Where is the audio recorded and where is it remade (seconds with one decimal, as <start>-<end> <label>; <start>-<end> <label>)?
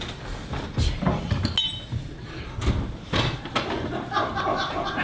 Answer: 0.0-5.0 recorded